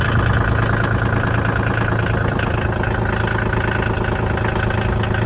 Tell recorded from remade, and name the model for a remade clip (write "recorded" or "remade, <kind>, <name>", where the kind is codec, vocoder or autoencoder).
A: recorded